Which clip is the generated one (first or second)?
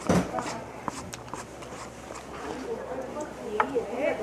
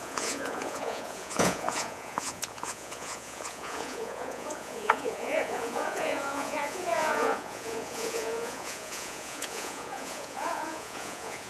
second